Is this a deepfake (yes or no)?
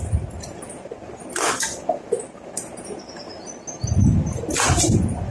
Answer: no